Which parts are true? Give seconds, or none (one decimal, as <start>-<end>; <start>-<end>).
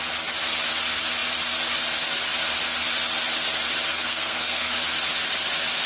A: 0.0-3.9; 4.7-5.9